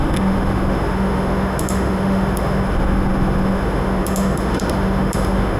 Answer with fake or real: fake